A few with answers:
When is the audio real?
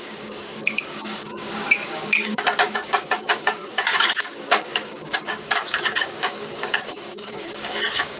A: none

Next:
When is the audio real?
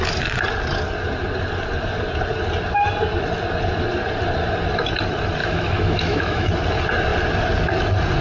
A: 0.0-5.4; 6.5-8.2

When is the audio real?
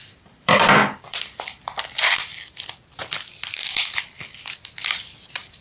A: 2.3-3.3